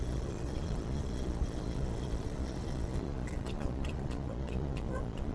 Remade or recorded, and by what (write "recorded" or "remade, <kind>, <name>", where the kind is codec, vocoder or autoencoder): remade, vocoder, Vocos